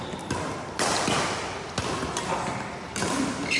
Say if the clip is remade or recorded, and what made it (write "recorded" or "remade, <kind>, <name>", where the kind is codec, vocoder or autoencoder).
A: recorded